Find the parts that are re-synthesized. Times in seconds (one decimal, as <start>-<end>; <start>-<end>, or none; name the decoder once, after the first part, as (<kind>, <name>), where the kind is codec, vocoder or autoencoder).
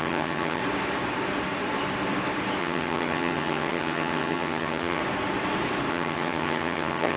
0.0-0.6 (vocoder, HiFi-GAN); 2.6-5.0; 5.9-7.2